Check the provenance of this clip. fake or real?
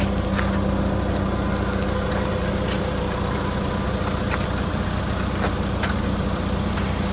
real